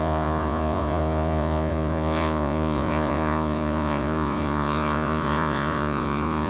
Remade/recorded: remade